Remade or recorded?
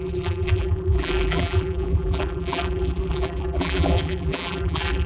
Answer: remade